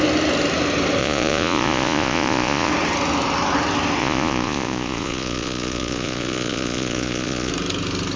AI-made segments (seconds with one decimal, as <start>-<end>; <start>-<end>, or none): 1.0-2.7; 4.0-7.5